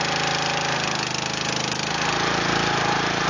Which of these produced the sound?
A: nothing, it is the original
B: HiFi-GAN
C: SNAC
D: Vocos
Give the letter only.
A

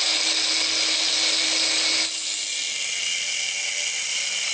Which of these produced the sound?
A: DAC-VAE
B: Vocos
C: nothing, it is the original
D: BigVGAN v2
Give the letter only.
C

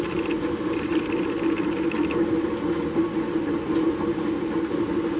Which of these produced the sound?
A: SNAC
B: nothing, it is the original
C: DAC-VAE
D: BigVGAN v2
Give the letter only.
B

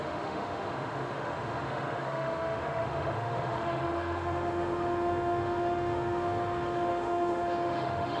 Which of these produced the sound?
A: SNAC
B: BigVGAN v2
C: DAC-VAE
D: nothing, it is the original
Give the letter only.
C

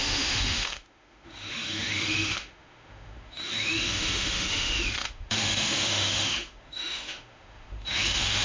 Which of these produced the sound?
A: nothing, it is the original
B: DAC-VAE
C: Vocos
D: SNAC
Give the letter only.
B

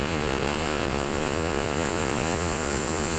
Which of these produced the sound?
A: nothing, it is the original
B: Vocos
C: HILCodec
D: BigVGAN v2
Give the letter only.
B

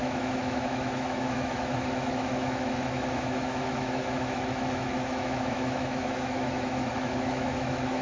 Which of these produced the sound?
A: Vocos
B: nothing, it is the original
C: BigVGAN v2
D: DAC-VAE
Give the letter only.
D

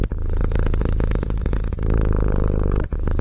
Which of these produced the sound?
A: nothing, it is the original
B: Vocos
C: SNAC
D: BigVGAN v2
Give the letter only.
D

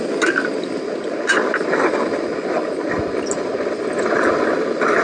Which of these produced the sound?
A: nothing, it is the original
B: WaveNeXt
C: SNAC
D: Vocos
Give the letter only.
A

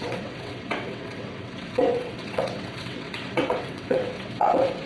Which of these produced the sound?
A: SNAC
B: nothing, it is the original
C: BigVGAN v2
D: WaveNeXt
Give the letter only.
D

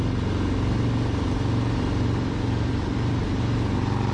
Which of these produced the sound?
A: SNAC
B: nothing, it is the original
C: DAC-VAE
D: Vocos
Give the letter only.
B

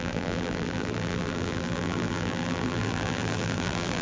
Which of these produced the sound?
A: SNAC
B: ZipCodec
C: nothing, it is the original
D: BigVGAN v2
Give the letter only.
D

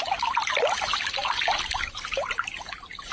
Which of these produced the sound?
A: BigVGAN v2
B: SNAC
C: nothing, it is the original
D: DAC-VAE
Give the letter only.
C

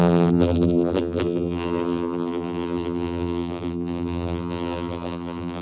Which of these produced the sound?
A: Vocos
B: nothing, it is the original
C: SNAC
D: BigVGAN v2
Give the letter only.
D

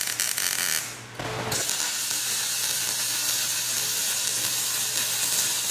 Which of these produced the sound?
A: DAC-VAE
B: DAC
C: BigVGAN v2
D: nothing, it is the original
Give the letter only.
D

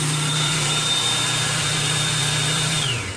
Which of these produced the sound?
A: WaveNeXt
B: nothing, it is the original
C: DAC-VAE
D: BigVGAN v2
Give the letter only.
D